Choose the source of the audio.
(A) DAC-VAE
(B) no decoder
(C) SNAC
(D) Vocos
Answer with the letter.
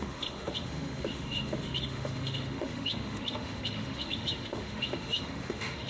A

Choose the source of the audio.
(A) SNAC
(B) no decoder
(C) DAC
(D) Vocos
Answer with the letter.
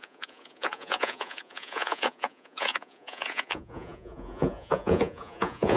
D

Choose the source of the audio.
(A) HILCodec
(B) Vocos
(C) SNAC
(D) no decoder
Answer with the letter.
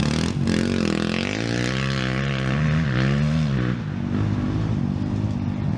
D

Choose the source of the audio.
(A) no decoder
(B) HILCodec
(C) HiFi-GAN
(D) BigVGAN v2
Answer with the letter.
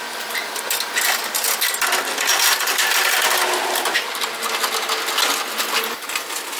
A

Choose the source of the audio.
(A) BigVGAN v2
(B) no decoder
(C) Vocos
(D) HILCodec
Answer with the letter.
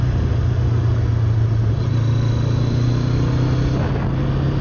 B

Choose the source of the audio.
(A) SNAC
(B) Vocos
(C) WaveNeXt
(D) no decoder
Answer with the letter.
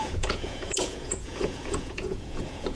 B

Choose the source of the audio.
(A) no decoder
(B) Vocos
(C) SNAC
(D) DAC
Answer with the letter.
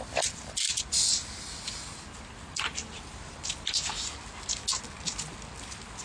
A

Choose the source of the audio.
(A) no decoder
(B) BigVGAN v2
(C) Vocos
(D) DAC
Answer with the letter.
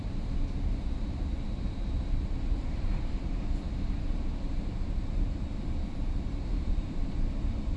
B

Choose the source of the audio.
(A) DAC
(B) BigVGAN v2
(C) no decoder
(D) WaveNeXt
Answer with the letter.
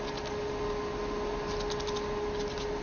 C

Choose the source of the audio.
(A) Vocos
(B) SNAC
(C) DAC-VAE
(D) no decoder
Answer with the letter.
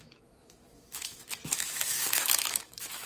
C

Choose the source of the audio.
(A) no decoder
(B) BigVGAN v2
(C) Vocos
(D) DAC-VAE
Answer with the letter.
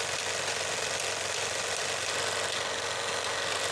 A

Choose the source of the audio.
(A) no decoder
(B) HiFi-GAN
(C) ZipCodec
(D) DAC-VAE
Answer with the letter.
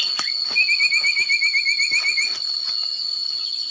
A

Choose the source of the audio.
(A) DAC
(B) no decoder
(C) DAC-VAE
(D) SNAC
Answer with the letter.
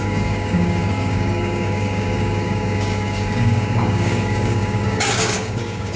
A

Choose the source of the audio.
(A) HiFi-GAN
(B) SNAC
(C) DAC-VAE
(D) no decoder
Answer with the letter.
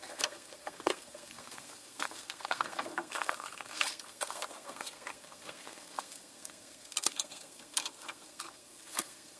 B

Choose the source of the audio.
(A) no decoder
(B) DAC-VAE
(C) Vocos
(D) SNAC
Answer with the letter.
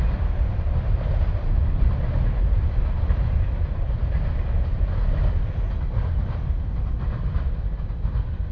A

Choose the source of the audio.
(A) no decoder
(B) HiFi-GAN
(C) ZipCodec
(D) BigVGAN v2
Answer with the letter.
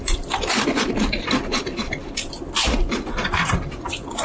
D